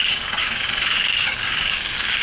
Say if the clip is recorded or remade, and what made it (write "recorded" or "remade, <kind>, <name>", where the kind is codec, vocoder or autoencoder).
remade, codec, DAC